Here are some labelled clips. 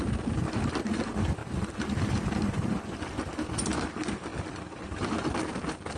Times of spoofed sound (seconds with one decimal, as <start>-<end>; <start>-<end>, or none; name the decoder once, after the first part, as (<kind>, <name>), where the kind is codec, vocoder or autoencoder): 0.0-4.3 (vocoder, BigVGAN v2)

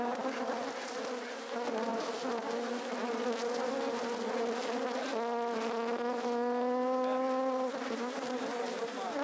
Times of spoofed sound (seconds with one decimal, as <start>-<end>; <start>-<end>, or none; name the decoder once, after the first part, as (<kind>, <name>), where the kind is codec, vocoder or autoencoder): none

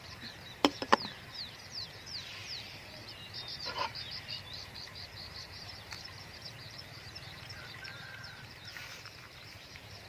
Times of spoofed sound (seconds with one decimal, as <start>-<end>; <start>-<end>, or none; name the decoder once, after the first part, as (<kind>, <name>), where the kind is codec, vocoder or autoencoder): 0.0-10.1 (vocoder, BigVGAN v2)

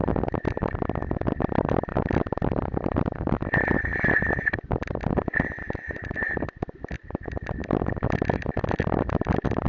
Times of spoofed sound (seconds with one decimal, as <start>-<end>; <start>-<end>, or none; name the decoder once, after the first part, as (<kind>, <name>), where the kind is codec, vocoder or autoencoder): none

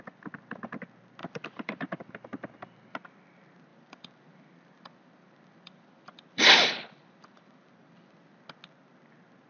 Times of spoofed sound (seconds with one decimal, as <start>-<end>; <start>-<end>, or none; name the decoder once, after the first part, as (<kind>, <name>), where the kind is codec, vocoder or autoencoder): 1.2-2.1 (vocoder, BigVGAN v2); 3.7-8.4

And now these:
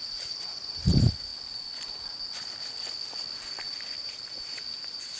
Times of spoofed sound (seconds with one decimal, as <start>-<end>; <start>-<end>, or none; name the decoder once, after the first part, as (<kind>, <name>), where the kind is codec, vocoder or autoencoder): none

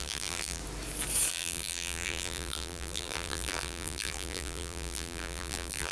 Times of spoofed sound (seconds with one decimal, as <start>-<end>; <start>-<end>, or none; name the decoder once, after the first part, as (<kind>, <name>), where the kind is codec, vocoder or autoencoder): 0.0-0.6 (vocoder, BigVGAN v2); 1.3-5.9